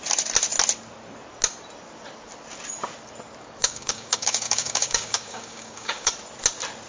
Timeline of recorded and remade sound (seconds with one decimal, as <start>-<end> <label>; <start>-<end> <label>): 0.0-3.6 recorded; 3.6-6.1 remade; 6.1-6.9 recorded